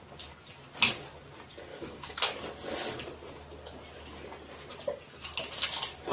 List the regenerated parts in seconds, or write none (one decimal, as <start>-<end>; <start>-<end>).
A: 1.7-2.4